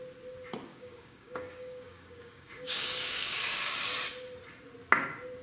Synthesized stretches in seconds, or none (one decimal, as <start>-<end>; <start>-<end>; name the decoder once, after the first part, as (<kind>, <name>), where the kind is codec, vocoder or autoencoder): 0.7-3.9 (codec, DAC)